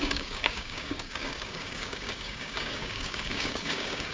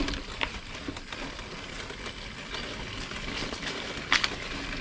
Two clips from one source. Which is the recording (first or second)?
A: second